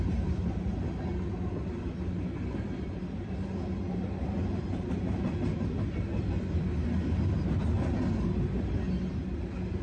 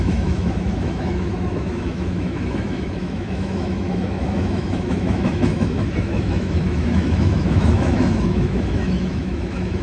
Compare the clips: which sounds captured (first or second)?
first